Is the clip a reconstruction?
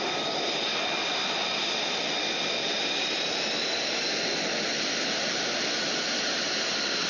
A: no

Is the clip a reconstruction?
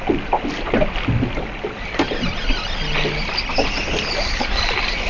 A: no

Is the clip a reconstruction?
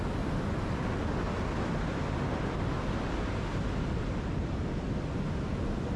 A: no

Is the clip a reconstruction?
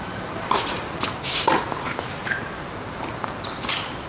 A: yes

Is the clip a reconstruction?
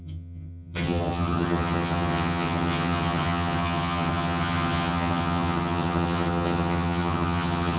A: yes